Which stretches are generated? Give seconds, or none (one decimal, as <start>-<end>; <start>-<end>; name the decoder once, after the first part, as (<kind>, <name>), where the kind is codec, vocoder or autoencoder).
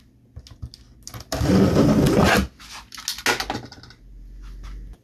none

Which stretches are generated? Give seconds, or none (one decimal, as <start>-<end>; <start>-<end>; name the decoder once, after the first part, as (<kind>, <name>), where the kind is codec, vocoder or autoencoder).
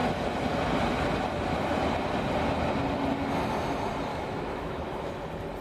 4.1-5.1 (autoencoder, DAC-VAE)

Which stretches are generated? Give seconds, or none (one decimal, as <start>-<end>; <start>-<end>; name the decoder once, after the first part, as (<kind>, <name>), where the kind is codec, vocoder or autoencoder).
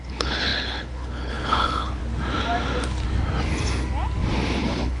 0.0-2.0 (codec, HILCodec); 4.6-5.0